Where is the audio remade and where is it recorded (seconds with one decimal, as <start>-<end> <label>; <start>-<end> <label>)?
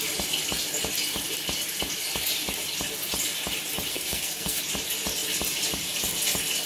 0.0-3.9 recorded; 3.9-4.6 remade; 4.6-6.7 recorded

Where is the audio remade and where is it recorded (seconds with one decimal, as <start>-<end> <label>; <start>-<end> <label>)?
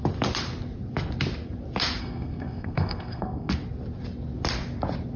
0.0-2.0 recorded; 2.0-3.5 remade; 3.5-5.2 recorded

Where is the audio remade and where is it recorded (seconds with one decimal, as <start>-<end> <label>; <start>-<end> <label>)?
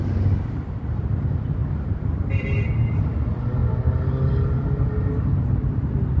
0.0-6.2 recorded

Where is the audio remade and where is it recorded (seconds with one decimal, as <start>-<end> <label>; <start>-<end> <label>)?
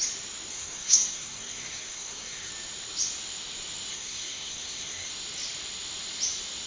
0.0-0.5 recorded; 0.5-2.5 remade; 2.5-3.9 recorded; 3.9-5.1 remade; 5.1-6.7 recorded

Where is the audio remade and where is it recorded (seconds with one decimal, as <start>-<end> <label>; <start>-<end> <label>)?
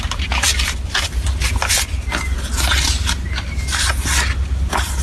0.0-5.0 recorded